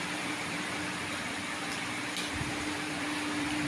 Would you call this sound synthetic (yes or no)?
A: yes